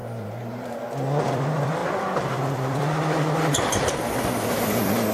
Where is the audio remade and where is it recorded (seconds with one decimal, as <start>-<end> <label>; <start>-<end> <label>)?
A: 0.0-1.3 recorded; 1.3-5.1 remade